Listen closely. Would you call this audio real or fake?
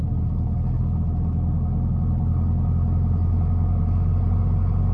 real